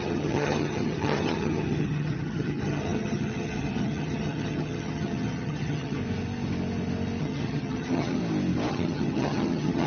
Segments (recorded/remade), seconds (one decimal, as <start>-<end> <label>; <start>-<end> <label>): 0.0-6.0 remade; 6.0-7.2 recorded; 7.2-8.2 remade; 8.2-8.7 recorded; 8.7-9.9 remade